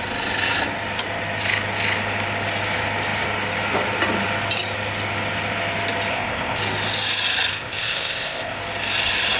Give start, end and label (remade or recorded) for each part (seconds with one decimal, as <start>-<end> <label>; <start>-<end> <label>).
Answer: 0.0-6.1 recorded; 6.1-6.6 remade; 6.6-7.5 recorded; 7.5-8.6 remade; 8.6-9.4 recorded